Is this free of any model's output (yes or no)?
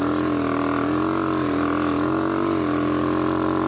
yes